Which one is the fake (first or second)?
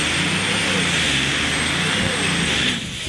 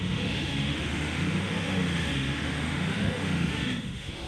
second